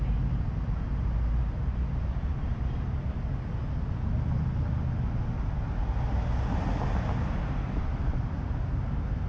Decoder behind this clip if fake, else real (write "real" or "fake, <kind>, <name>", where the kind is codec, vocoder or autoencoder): real